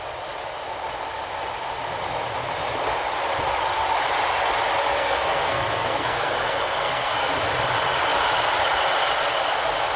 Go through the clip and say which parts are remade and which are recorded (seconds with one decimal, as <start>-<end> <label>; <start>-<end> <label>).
0.0-4.9 recorded; 4.9-7.3 remade; 7.3-10.0 recorded